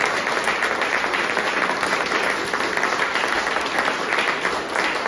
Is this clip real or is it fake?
real